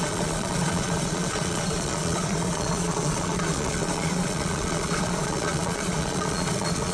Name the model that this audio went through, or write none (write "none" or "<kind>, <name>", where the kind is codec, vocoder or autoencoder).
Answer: vocoder, Vocos